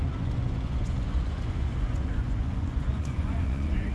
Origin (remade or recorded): remade